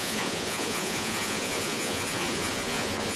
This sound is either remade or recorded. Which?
remade